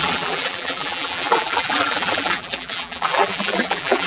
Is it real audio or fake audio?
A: fake